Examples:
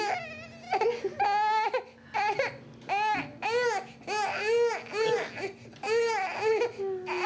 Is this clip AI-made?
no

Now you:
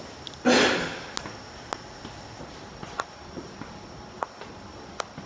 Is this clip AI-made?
no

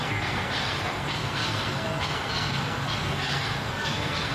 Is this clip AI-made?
yes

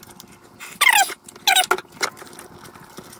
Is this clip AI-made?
no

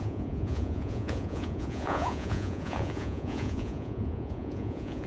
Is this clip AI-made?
yes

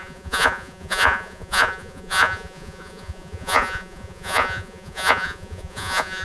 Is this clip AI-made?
yes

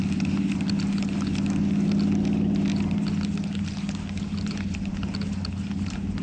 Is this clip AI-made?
no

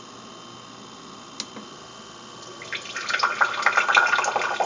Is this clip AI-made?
no